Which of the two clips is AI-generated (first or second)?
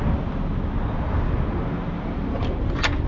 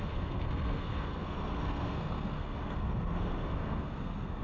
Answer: second